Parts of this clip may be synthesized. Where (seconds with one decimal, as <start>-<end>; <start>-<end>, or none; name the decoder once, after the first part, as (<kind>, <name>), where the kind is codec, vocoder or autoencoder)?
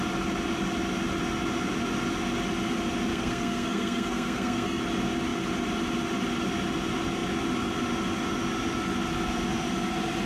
3.1-4.8 (codec, SNAC)